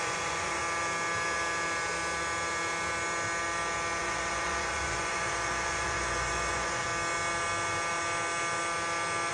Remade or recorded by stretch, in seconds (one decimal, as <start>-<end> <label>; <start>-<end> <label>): 0.0-0.6 remade; 0.6-4.0 recorded; 4.0-6.9 remade; 6.9-9.3 recorded